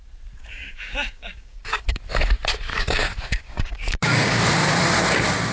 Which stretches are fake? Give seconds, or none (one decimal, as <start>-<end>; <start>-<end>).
0.4-2.0; 2.7-4.4